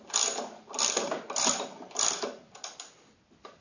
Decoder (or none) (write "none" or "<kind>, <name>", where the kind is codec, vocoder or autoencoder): none